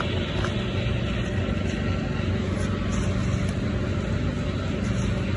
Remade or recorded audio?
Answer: recorded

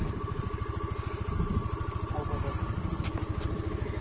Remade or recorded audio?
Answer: recorded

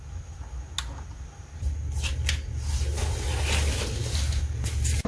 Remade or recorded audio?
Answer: recorded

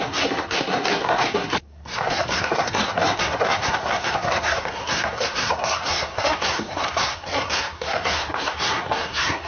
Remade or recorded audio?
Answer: remade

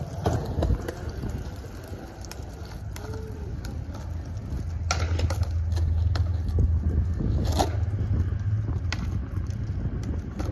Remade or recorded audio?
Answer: recorded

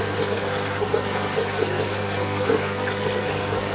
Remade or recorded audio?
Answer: remade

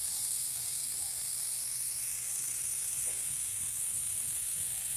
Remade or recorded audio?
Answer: remade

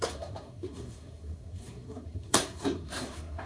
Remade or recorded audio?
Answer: remade